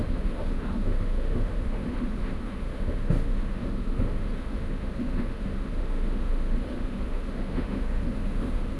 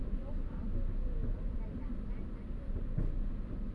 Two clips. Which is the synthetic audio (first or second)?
first